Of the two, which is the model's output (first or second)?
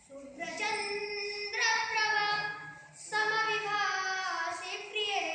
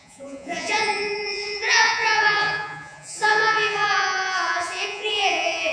second